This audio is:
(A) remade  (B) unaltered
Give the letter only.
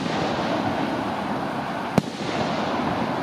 B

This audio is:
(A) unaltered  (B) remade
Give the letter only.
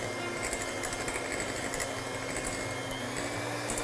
A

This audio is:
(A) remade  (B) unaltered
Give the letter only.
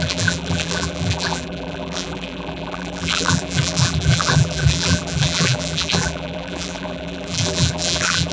A